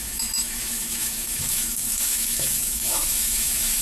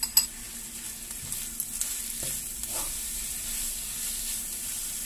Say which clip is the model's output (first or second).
first